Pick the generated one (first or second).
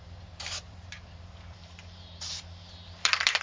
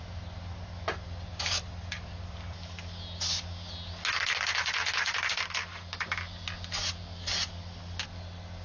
first